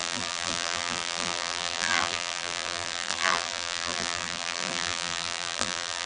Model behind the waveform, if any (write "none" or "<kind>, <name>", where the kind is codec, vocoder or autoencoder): vocoder, BigVGAN v2